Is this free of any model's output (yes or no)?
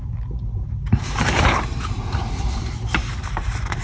no